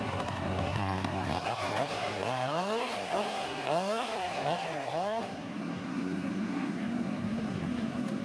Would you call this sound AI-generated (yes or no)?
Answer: yes